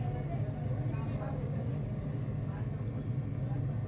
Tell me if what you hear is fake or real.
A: real